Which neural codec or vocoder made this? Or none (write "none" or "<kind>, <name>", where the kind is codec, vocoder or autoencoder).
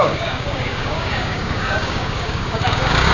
codec, DAC